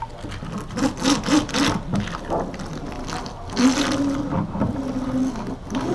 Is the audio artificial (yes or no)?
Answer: no